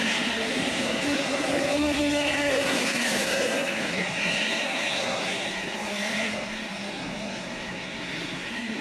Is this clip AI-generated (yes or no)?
yes